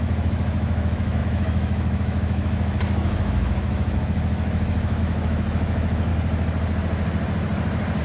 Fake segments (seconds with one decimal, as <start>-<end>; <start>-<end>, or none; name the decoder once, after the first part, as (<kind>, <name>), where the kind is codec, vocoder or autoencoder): 0.0-6.1 (autoencoder, DAC-VAE)